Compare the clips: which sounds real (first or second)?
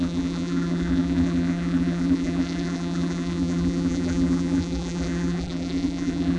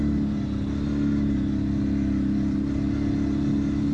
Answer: second